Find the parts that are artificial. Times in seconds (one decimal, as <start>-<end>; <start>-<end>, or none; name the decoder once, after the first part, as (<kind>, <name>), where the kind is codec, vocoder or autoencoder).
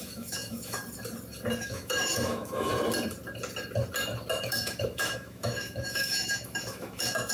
0.0-0.8 (autoencoder, DAC-VAE); 1.6-2.7; 4.4-7.3